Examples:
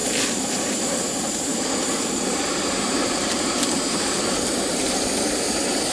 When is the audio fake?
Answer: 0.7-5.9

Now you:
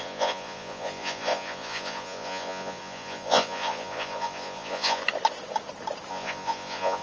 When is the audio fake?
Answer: 0.0-5.0; 6.1-7.0

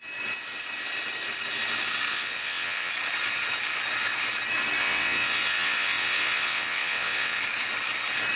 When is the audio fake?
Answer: 2.1-2.9; 4.8-7.4

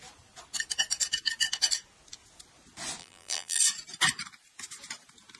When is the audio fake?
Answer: 3.0-3.6

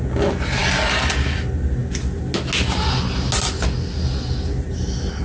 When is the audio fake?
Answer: none

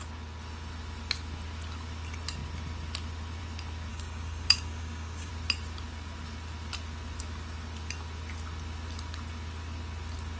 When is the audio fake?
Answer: 3.9-5.3

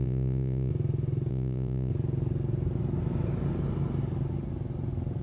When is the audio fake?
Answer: 0.0-0.7; 1.3-1.9

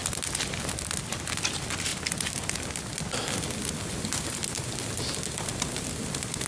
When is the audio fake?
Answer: none